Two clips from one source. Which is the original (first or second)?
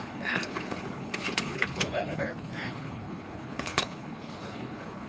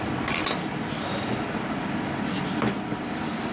second